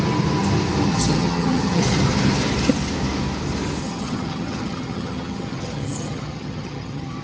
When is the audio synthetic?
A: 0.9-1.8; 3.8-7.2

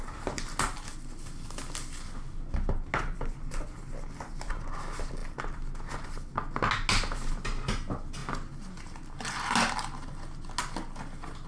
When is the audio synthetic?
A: none

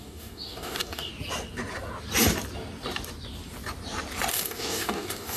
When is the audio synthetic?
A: 0.0-1.1; 4.3-5.4

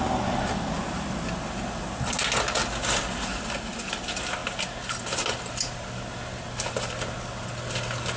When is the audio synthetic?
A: none

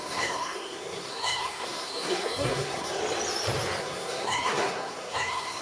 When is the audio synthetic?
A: 0.0-3.0; 3.8-5.6

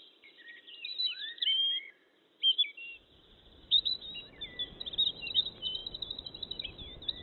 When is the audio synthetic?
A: none

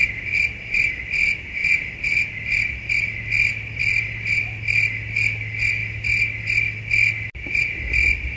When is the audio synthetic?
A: none